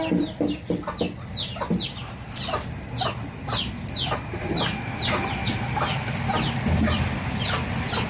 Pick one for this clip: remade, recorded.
recorded